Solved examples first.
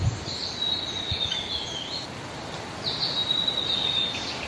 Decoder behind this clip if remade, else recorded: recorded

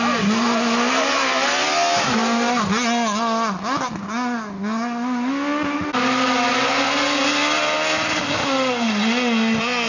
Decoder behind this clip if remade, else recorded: recorded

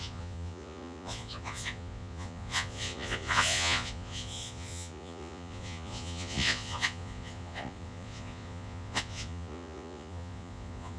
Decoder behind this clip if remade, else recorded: remade, vocoder, Vocos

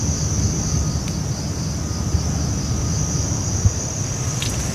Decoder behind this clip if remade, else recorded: recorded